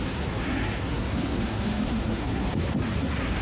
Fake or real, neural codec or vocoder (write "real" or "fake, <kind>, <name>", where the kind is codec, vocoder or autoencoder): fake, codec, SNAC